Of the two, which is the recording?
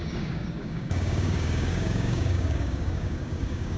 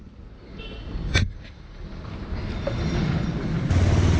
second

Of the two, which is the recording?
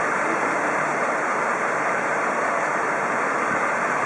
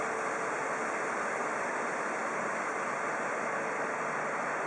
second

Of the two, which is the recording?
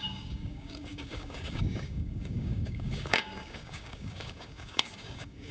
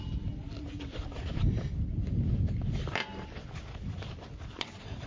second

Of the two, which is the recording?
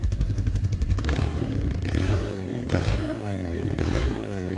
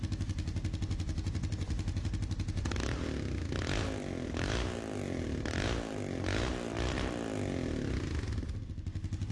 second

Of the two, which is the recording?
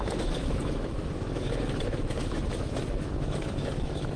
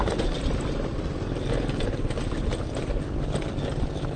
second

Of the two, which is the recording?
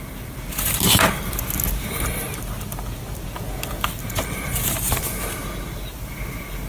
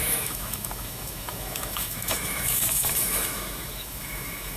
first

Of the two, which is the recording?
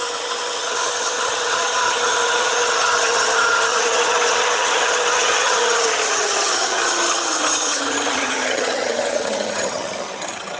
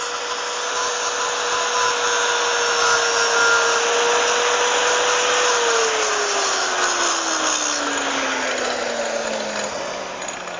second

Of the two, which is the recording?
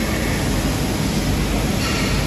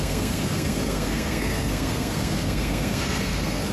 first